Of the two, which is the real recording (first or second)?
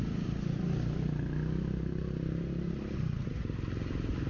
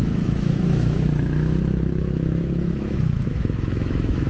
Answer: first